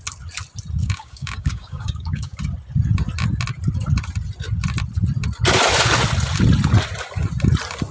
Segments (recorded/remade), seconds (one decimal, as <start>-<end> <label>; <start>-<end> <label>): 0.0-0.8 recorded; 0.8-2.4 remade; 2.4-7.9 recorded